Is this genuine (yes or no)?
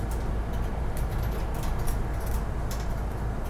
yes